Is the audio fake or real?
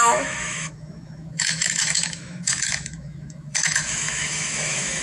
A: fake